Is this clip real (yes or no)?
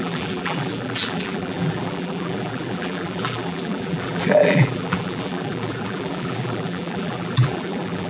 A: no